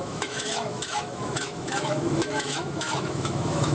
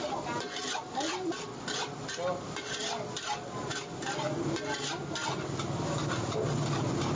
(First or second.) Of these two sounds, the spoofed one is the first